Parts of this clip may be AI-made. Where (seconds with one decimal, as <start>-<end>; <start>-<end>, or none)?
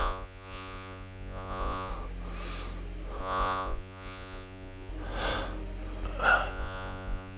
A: 0.0-1.9; 3.2-4.9; 6.5-7.4